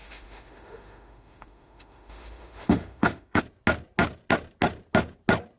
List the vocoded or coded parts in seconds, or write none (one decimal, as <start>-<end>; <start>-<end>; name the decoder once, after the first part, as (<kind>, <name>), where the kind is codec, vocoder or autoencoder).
0.0-3.4 (autoencoder, DAC-VAE)